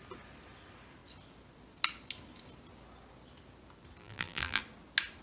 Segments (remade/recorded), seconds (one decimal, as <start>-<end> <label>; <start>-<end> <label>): 0.0-4.0 recorded; 4.0-4.6 remade; 4.6-5.2 recorded